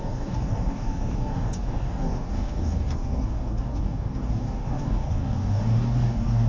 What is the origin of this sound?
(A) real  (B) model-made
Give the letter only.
B